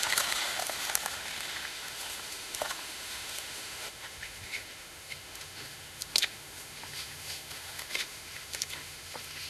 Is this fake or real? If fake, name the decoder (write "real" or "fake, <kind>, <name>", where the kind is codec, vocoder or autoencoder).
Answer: fake, autoencoder, DAC-VAE